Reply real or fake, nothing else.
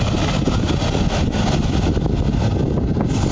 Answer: real